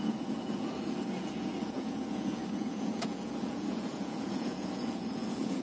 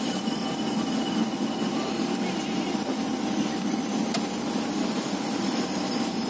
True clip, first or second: second